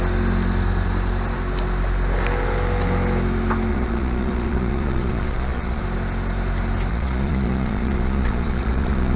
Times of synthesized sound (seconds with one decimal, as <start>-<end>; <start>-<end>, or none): 3.7-5.8; 6.9-9.2